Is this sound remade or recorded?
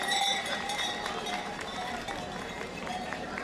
remade